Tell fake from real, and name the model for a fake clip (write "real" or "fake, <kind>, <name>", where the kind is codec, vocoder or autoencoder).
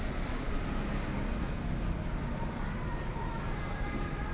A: real